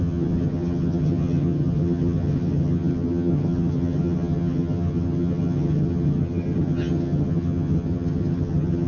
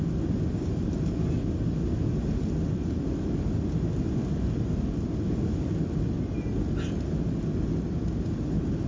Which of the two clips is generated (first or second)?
first